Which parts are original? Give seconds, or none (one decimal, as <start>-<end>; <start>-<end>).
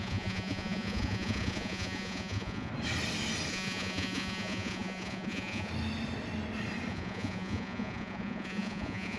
2.7-3.5; 5.7-6.9